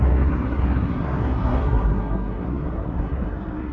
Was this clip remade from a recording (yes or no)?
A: yes